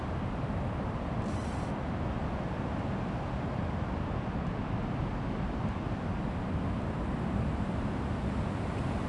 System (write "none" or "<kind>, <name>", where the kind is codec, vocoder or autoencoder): none